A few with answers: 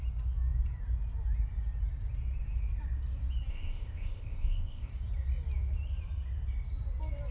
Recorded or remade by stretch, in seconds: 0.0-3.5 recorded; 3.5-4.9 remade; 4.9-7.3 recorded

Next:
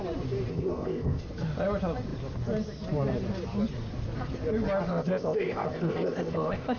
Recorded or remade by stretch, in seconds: 0.0-0.5 recorded; 0.5-1.2 remade; 1.2-4.9 recorded; 4.9-6.8 remade